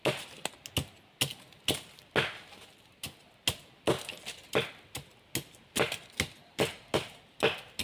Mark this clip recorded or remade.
recorded